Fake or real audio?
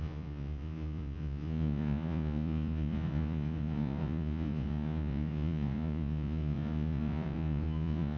fake